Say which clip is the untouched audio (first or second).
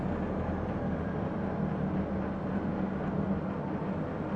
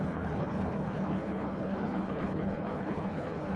first